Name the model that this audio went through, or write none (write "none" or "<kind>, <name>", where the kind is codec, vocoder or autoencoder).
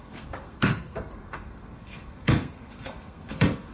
codec, SNAC